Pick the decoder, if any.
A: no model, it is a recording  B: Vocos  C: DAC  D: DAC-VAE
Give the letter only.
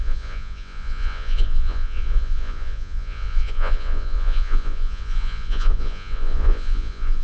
B